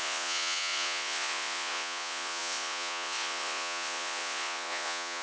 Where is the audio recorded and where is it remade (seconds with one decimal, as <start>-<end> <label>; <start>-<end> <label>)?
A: 0.0-5.2 remade